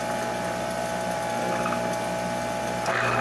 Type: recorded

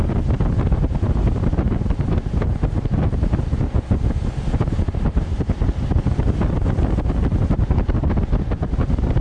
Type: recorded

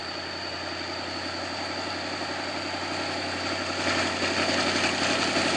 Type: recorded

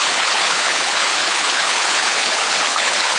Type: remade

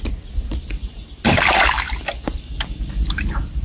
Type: recorded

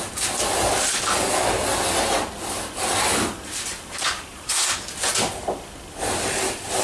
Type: recorded